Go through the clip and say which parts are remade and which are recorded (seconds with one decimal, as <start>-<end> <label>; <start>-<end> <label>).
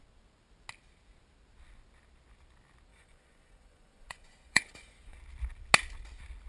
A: 0.0-2.9 recorded; 2.9-5.2 remade; 5.2-6.5 recorded